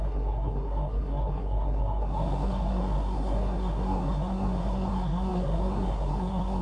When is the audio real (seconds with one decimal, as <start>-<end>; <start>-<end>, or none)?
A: none